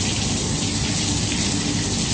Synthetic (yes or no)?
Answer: no